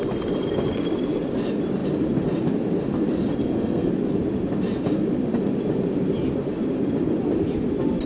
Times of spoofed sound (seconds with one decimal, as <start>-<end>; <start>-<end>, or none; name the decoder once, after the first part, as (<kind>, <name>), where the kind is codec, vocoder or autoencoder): 3.4-3.9 (codec, SNAC)